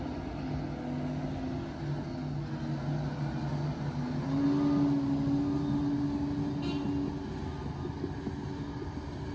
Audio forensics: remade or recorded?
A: recorded